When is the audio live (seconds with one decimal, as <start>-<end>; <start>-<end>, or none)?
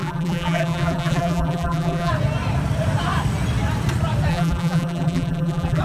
2.1-4.3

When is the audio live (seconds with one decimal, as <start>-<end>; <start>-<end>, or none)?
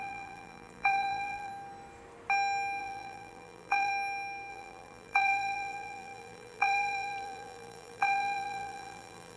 1.5-2.8; 3.9-4.5